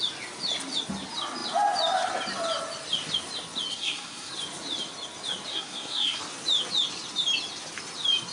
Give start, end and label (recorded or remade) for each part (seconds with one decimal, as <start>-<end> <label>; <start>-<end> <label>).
0.0-3.7 recorded; 3.7-4.3 remade; 4.3-5.5 recorded; 5.5-6.2 remade; 6.2-8.3 recorded